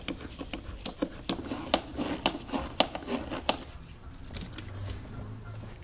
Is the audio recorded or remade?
recorded